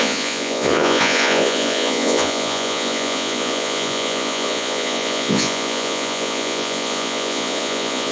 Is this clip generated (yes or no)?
yes